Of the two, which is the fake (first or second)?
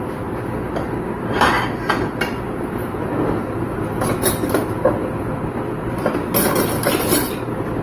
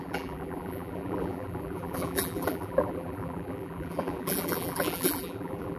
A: second